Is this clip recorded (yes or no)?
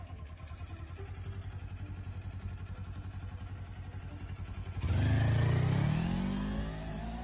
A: yes